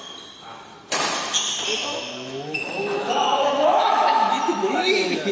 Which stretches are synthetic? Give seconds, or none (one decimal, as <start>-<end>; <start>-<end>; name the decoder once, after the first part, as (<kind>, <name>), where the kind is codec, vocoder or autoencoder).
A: 1.8-5.3 (autoencoder, DAC-VAE)